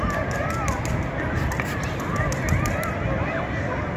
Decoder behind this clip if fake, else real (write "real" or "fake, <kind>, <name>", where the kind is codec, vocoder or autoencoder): real